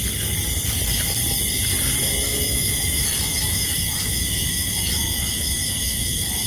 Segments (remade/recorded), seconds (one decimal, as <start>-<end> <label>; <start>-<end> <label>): 0.0-2.3 recorded; 2.3-6.5 remade